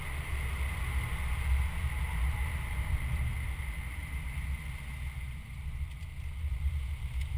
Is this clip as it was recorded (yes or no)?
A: yes